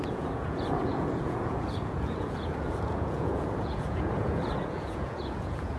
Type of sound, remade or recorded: remade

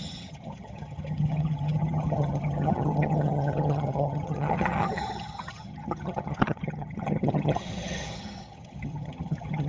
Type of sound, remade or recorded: remade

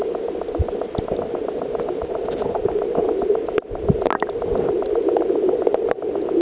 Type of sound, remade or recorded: recorded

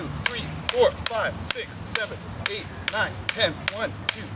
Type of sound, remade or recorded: recorded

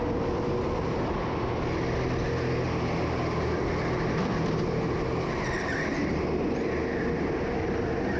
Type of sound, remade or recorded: recorded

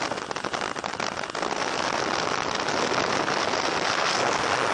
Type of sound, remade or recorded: recorded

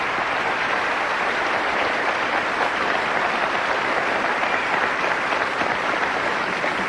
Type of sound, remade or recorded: remade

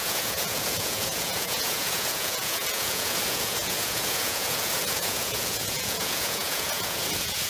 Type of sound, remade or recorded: remade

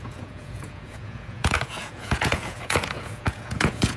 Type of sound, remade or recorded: remade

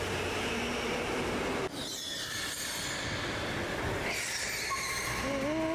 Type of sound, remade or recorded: recorded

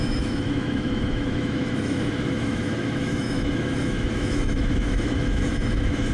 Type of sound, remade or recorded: remade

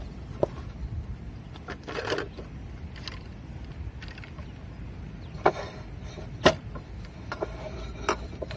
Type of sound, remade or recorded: recorded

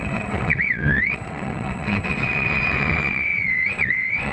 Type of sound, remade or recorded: remade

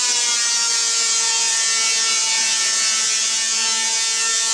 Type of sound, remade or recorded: remade